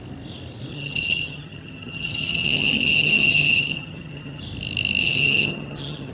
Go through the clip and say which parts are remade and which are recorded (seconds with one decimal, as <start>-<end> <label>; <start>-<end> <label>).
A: 0.0-0.7 recorded; 0.7-4.4 remade; 4.4-5.0 recorded; 5.0-6.1 remade